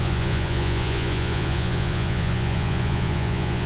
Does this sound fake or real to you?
fake